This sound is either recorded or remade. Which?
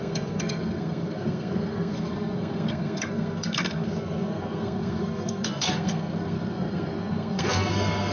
remade